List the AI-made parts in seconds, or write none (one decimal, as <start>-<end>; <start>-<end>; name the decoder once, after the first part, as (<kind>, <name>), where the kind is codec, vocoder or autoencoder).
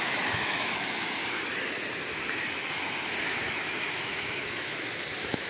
0.0-1.2 (autoencoder, DAC-VAE); 3.2-5.5